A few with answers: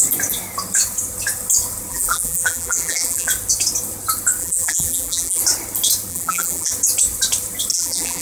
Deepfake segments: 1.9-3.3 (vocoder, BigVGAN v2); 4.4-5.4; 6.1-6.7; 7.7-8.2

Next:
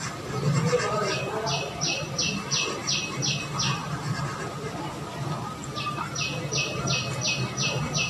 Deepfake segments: 3.8-4.4 (vocoder, BigVGAN v2)

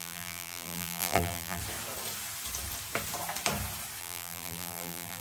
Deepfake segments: 0.0-1.6 (vocoder, BigVGAN v2); 4.0-5.2

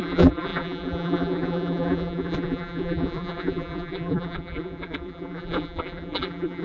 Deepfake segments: 0.0-6.6 (vocoder, BigVGAN v2)

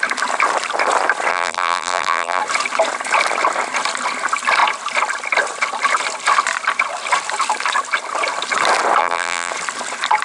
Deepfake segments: 1.3-2.4 (vocoder, BigVGAN v2); 9.0-9.5